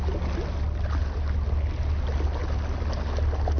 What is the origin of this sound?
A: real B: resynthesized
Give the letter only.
A